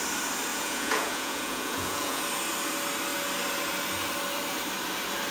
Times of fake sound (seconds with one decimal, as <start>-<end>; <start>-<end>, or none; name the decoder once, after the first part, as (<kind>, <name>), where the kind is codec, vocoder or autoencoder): 0.5-2.2 (vocoder, Vocos)